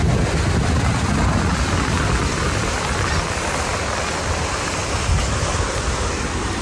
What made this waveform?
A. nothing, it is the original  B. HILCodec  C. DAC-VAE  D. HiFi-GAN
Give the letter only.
A